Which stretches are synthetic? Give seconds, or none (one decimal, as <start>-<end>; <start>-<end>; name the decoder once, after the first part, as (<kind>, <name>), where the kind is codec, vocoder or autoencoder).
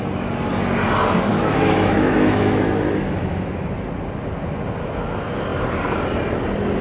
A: 1.3-3.7 (autoencoder, DAC-VAE)